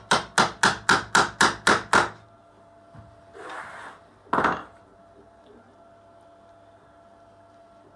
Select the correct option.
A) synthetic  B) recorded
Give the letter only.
B